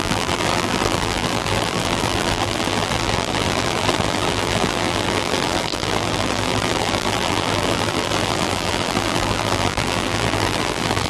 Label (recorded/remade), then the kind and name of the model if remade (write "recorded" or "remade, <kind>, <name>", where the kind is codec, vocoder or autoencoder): remade, vocoder, BigVGAN v2